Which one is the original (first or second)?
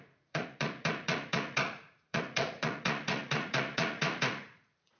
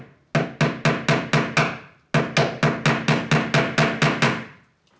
second